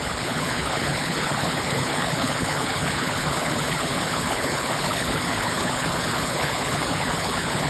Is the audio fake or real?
fake